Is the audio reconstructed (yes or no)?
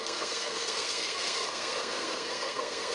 yes